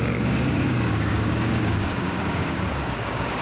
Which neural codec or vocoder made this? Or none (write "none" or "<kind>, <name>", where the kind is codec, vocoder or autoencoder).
codec, DAC